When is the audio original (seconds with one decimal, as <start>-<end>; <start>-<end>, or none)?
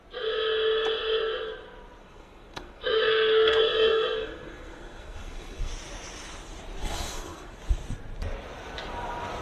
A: 0.0-2.0; 5.7-6.8; 7.6-9.4